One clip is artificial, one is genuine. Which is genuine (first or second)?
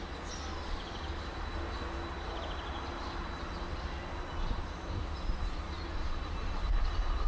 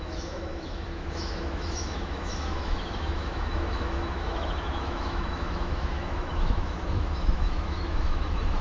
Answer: first